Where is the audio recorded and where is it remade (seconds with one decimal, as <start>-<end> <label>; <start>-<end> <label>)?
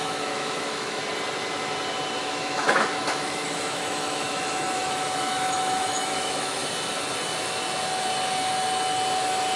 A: 0.0-1.0 remade; 1.0-2.2 recorded; 2.2-6.6 remade; 6.6-9.6 recorded